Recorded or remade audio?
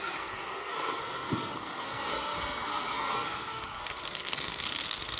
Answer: remade